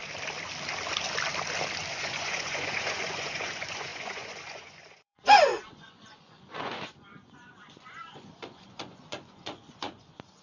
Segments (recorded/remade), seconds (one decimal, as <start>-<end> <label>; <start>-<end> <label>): 0.0-1.9 recorded; 1.9-10.4 remade